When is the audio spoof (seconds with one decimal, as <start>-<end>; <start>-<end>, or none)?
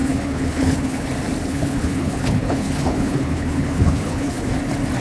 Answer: 0.0-1.1; 1.5-4.5